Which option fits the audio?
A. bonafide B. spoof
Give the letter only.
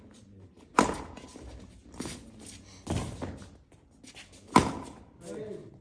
A